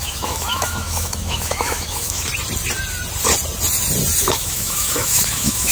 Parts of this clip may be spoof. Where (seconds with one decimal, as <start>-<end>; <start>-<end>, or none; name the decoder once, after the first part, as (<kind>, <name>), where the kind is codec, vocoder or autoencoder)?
0.0-2.3 (autoencoder, DAC-VAE); 4.2-5.7